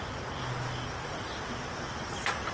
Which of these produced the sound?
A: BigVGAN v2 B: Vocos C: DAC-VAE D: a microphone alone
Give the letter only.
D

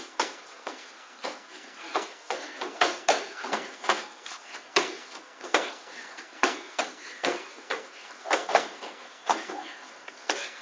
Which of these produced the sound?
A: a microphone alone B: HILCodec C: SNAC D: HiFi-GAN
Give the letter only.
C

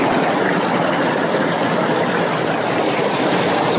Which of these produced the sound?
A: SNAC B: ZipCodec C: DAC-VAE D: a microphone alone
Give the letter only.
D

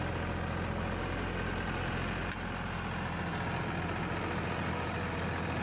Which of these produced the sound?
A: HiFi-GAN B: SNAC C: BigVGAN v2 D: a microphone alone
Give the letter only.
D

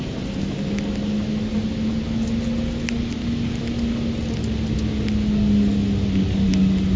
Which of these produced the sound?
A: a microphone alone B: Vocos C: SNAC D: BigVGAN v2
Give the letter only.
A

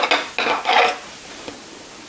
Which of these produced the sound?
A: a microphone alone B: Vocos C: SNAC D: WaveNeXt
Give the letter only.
A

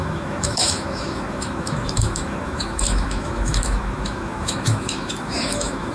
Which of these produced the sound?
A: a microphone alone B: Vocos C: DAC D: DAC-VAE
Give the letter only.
D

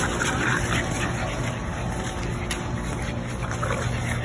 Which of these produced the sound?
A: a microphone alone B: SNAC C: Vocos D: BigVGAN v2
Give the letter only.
A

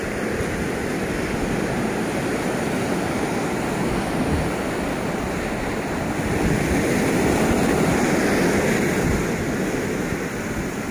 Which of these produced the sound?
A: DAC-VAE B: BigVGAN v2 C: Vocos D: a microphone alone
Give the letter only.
D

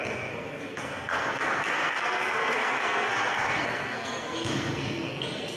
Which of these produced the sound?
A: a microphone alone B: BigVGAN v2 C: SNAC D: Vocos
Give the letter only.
C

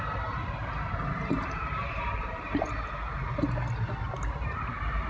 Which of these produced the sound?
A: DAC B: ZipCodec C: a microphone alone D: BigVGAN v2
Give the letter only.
D